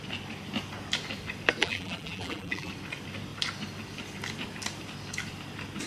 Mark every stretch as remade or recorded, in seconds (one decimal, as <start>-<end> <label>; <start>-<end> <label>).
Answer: 0.0-1.6 recorded; 1.6-2.7 remade; 2.7-5.9 recorded